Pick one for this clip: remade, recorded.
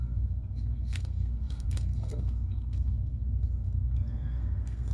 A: remade